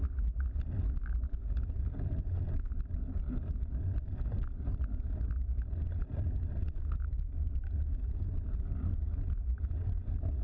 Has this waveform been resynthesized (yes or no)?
no